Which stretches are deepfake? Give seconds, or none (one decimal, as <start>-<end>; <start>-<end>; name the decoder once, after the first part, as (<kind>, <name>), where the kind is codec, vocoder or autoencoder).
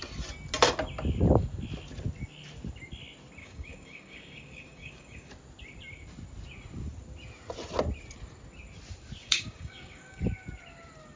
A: 3.4-5.3 (codec, DAC); 9.2-10.2